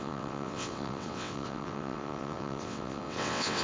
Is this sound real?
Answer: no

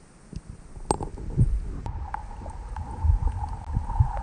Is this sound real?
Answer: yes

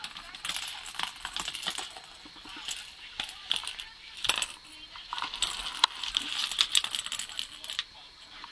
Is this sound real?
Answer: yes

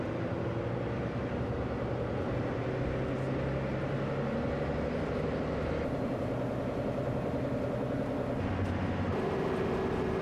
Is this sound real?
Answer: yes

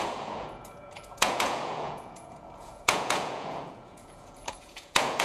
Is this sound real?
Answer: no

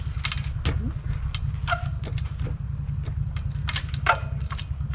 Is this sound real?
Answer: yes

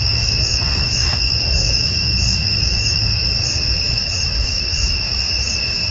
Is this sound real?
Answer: no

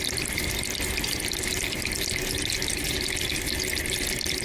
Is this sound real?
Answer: yes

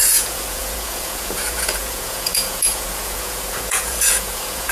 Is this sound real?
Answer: no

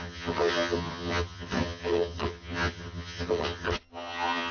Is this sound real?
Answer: no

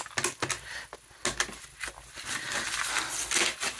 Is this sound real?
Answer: yes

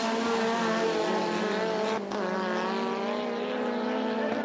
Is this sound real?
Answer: yes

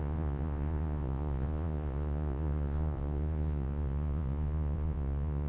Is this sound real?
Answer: no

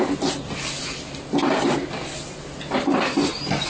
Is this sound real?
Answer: yes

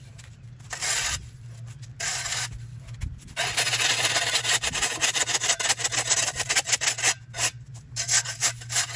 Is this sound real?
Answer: yes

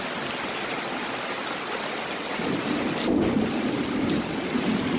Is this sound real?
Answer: yes